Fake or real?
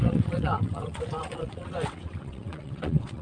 fake